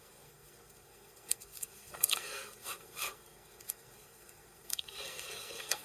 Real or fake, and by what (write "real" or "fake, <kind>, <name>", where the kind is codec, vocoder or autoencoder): fake, codec, SNAC